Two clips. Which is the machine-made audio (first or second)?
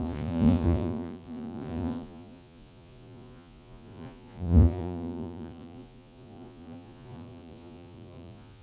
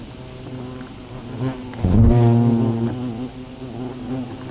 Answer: first